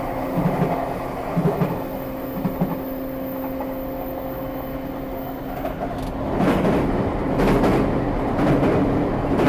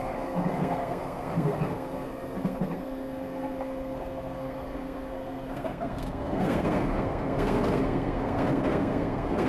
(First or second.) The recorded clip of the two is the first